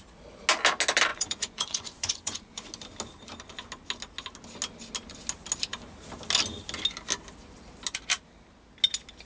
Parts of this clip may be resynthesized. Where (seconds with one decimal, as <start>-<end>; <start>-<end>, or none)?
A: 1.1-2.7